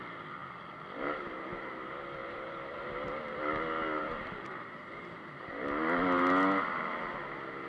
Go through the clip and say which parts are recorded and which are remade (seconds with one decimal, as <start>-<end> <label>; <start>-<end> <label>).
0.0-0.4 recorded; 0.4-1.7 remade; 1.7-2.2 recorded; 2.2-3.4 remade; 3.4-4.0 recorded; 4.0-5.5 remade; 5.5-7.7 recorded